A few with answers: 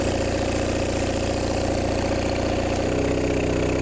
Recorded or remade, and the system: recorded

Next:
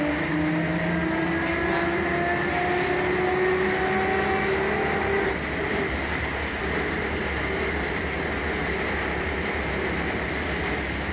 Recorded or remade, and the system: recorded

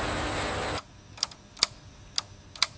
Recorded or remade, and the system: recorded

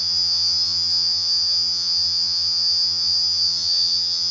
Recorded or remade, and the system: remade, vocoder, HiFi-GAN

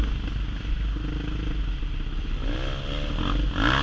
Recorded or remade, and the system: recorded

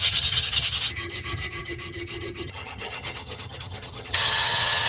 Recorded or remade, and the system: remade, vocoder, HiFi-GAN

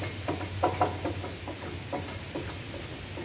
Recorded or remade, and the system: recorded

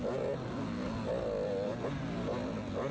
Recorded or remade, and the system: recorded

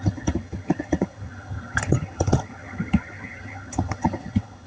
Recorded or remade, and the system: remade, vocoder, HiFi-GAN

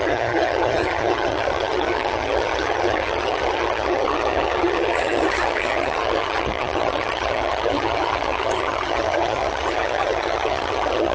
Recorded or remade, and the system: remade, vocoder, HiFi-GAN